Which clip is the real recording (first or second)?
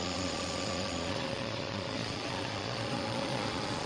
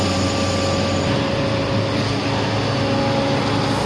second